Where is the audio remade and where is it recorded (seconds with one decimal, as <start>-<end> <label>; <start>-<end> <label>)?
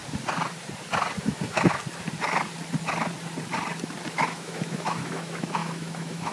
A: 0.0-1.2 recorded; 1.2-1.8 remade; 1.8-4.1 recorded; 4.1-6.3 remade